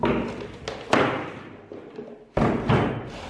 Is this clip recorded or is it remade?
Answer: recorded